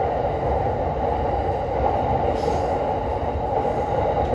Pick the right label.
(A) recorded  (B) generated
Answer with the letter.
A